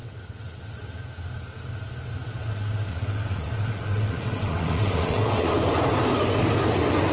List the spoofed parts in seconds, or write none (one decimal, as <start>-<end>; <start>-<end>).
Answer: 0.0-1.0; 2.2-5.5